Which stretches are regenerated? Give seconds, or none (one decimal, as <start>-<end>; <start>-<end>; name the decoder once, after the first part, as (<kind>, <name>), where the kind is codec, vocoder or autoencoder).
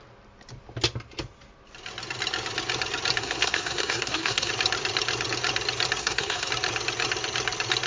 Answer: 3.2-4.5 (codec, SNAC); 6.0-6.5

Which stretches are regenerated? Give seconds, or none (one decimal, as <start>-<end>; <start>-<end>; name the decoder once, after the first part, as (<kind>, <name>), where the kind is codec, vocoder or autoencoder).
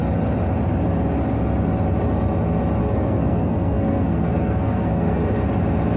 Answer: 2.8-5.2 (codec, SNAC)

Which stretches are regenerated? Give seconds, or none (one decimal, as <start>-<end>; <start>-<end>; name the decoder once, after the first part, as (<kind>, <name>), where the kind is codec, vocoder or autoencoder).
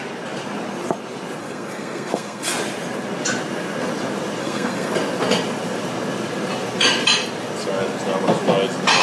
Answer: 1.4-2.5 (codec, SNAC); 4.4-4.9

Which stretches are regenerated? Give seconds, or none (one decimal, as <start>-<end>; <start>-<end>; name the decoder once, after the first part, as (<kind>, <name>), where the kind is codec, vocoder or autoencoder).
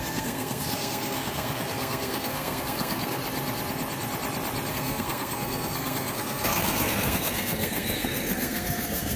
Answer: 0.0-3.2 (codec, SNAC); 4.7-9.2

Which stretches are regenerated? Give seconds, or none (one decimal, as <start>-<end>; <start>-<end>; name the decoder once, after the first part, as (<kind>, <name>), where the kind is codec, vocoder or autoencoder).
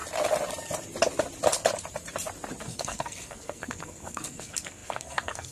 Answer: 2.6-5.5 (codec, SNAC)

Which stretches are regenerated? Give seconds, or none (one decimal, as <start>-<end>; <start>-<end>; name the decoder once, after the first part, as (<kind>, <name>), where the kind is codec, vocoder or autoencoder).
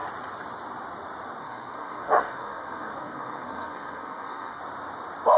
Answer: 1.4-4.6 (codec, SNAC)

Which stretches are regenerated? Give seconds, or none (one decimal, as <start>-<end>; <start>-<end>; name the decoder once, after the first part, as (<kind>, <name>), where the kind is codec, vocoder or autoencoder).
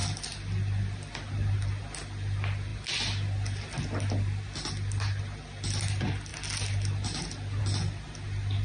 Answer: none